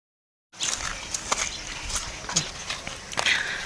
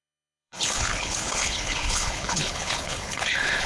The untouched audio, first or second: first